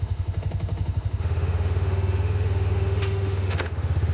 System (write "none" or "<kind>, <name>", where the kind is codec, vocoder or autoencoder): autoencoder, DAC-VAE